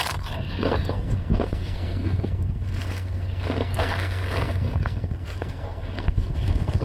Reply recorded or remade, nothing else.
remade